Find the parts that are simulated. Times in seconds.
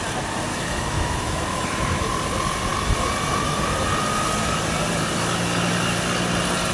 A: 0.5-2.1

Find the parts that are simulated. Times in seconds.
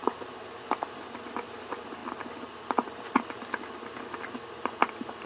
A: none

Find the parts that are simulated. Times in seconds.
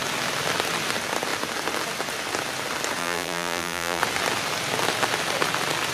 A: 3.0-4.0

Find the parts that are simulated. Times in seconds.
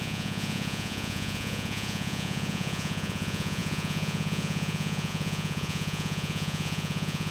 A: 0.0-7.3